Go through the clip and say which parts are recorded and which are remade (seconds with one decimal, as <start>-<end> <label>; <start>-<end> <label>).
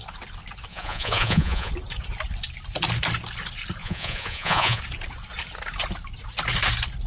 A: 0.0-0.7 recorded; 0.7-1.7 remade; 1.7-3.8 recorded; 3.8-4.8 remade; 4.8-7.1 recorded